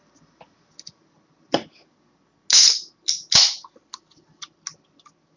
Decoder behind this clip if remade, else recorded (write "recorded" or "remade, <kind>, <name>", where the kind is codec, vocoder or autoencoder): recorded